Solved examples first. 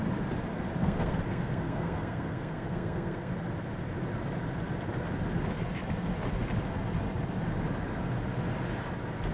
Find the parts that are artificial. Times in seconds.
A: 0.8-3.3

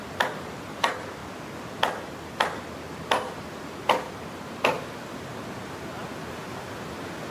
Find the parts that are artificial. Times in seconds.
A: none

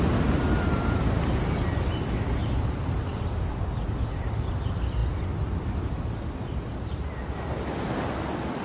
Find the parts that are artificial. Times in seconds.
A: none

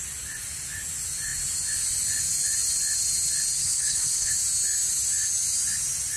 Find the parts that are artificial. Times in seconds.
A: 3.6-4.3

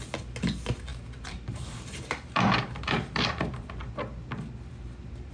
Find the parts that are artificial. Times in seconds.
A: 0.9-3.6

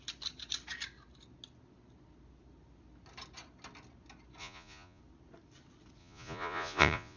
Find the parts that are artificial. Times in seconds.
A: 4.4-5.0; 6.0-7.2

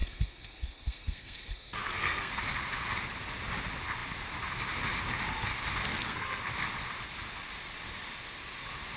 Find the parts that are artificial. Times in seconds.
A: 0.0-2.4; 5.9-6.4